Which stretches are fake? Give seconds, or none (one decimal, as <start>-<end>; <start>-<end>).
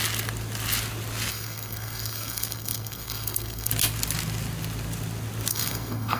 1.3-3.7; 5.5-6.2